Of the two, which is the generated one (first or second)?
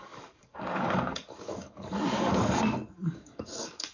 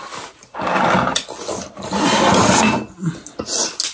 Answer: first